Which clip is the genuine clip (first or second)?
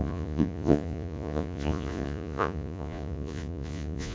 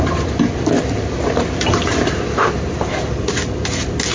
second